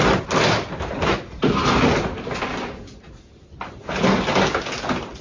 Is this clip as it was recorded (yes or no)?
yes